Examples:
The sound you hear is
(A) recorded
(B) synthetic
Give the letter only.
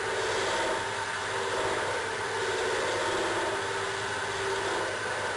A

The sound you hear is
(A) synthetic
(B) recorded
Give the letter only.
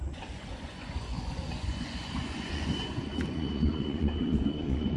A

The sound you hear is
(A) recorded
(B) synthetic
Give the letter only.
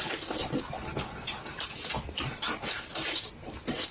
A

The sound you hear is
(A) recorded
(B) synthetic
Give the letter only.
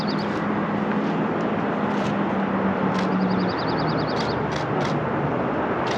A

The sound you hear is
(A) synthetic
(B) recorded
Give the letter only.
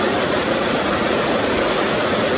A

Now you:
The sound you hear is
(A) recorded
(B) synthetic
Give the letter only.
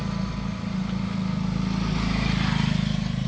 A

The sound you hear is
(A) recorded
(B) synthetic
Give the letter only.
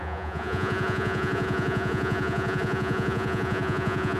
B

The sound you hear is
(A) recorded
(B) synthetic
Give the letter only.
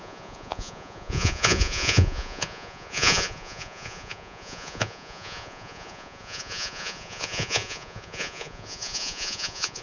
B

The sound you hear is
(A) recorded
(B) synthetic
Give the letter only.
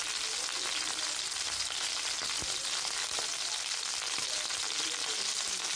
A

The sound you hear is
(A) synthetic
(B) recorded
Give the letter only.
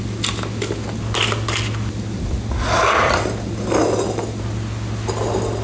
B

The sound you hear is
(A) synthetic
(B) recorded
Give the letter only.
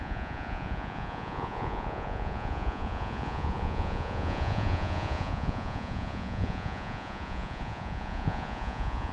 A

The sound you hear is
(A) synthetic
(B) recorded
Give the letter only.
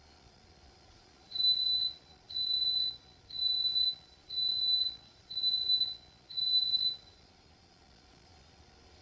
A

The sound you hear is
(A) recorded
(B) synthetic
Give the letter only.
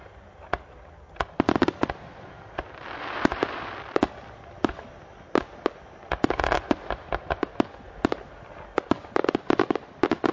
A